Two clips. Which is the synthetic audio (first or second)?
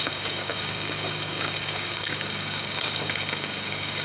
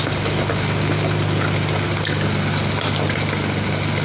first